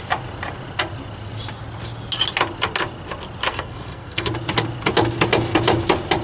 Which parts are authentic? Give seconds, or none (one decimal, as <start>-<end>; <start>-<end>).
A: 0.0-3.5; 4.3-6.2